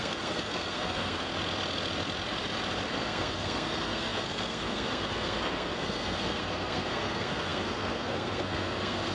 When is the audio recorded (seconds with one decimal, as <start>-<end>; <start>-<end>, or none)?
1.3-2.9